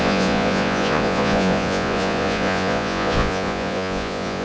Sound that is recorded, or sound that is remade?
remade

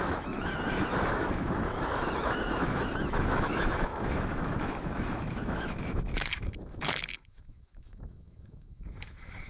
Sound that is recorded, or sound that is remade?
remade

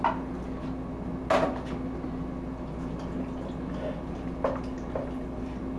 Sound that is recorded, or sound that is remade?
recorded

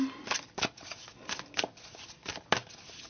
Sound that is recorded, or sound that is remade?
recorded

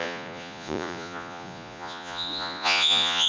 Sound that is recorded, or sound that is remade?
remade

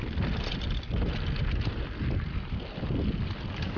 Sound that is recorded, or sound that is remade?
recorded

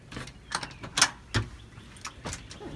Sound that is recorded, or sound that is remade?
recorded